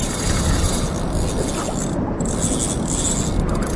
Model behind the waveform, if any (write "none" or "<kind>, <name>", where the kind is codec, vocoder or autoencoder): none